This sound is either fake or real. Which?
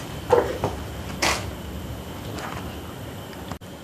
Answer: real